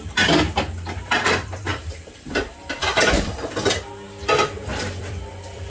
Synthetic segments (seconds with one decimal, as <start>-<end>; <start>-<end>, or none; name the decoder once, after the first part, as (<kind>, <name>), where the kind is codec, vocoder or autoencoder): 1.7-3.3 (vocoder, BigVGAN v2); 4.7-5.7